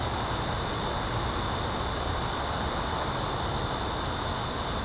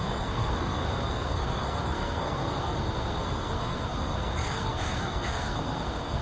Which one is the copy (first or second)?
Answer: second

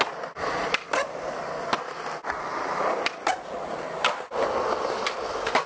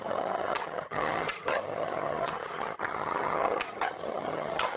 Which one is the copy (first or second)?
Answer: second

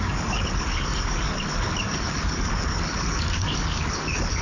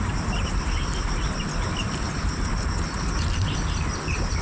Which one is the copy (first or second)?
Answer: first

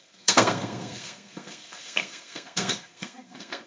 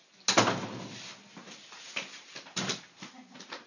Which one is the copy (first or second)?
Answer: first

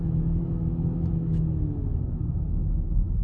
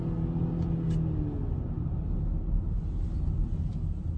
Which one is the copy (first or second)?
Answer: first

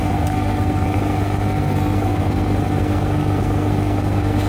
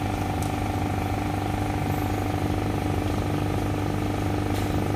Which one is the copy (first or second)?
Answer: first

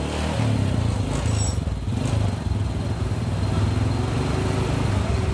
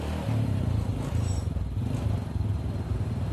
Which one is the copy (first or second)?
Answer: second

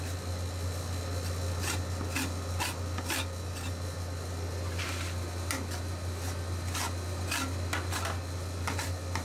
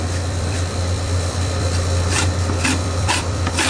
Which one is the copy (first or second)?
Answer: second